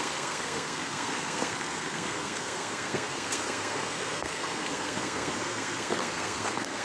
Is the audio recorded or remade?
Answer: remade